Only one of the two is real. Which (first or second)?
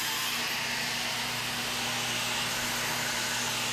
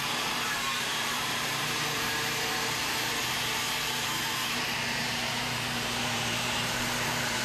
first